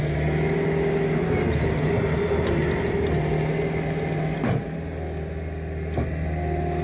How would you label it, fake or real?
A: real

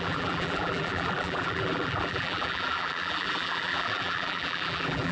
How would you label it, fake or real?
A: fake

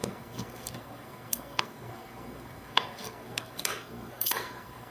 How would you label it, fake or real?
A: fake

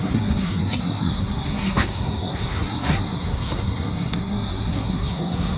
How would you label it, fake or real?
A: fake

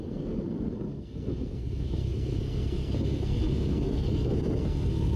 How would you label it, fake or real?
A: fake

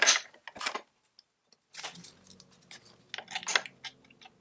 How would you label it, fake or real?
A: real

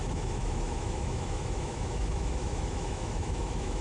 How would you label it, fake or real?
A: fake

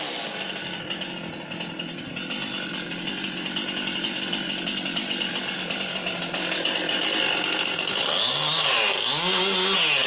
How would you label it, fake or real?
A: real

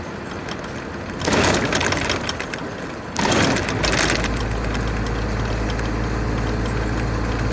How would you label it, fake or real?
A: real